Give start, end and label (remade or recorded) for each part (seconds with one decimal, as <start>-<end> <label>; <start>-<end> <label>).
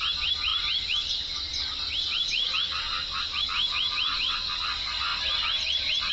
0.0-6.1 recorded